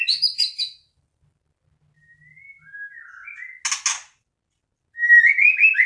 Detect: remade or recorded recorded